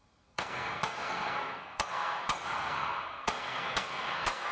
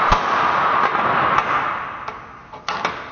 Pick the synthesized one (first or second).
first